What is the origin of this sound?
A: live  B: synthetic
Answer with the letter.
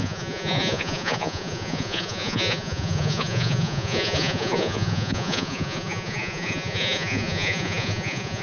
B